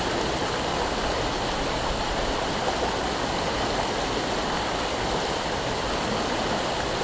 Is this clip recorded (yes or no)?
yes